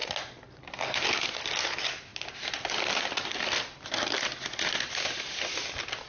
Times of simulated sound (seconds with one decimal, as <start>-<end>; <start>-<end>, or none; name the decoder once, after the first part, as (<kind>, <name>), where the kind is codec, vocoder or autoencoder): none